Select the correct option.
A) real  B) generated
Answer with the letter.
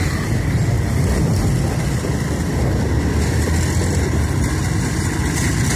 A